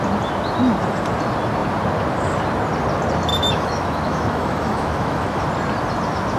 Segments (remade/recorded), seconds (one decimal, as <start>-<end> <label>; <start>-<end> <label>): 0.0-3.3 recorded; 3.3-5.4 remade; 5.4-6.4 recorded